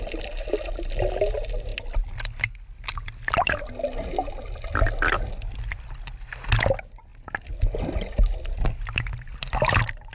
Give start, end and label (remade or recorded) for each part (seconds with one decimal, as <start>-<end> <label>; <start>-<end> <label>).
0.0-10.1 recorded